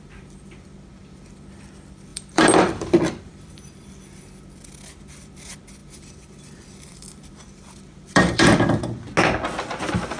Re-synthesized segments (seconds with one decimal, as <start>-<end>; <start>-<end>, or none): 2.1-3.5; 5.8-9.1

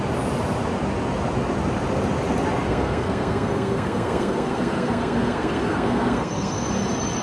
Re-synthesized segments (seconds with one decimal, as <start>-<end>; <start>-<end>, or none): 2.7-6.7

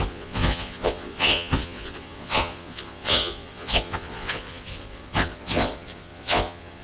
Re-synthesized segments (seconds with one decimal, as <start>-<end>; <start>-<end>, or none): 0.0-6.8

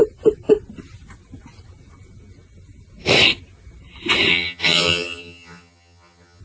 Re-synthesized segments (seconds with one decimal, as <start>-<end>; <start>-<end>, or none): 4.3-6.4

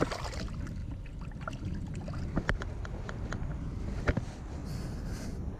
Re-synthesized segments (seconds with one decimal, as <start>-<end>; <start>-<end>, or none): 0.0-0.8; 2.2-3.5; 4.1-4.6

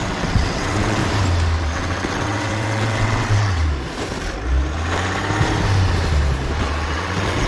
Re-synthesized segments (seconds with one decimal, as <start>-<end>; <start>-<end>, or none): 0.0-1.0; 1.6-3.6; 6.6-7.5